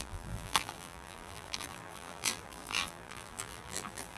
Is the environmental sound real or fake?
fake